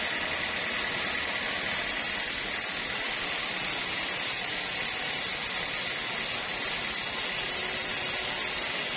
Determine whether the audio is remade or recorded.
recorded